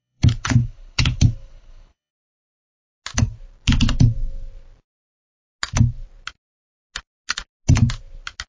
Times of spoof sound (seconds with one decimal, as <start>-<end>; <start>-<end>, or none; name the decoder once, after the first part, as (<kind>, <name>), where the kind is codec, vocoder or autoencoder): 0.0-2.1 (codec, HILCodec)